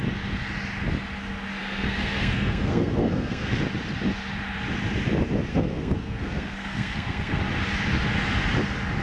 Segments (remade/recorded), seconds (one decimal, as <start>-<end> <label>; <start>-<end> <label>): 0.0-1.6 recorded; 1.6-3.6 remade; 3.6-5.5 recorded; 5.5-7.4 remade; 7.4-9.0 recorded